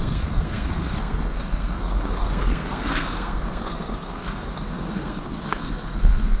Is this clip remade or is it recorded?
remade